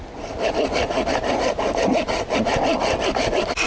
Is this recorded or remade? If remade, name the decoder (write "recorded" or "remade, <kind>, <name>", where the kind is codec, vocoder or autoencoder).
recorded